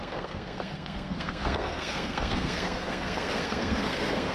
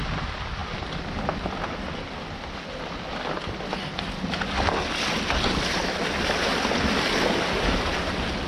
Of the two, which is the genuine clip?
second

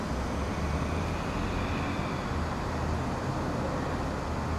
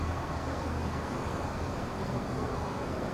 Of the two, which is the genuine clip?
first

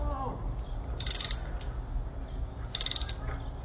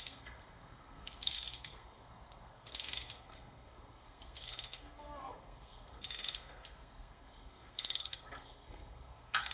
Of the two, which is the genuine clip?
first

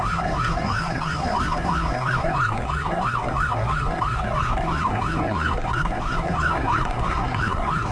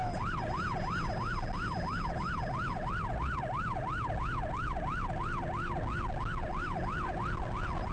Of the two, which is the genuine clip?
second